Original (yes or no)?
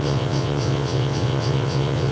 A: no